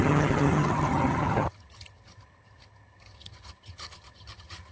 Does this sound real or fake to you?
fake